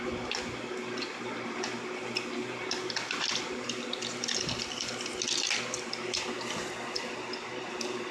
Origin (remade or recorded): recorded